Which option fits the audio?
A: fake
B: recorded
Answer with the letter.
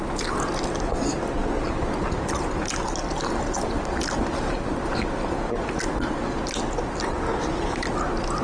B